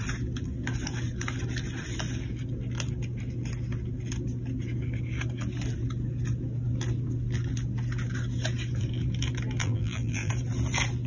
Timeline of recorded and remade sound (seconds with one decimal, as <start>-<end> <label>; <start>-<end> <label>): 0.0-9.6 recorded; 9.6-10.3 remade; 10.3-11.1 recorded